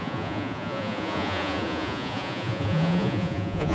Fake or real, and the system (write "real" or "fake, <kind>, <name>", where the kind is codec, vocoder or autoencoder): fake, vocoder, Vocos